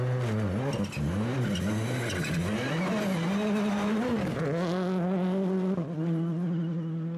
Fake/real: real